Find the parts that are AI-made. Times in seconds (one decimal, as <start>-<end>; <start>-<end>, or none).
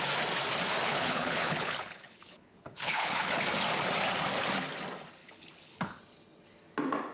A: 0.8-3.4; 5.2-6.0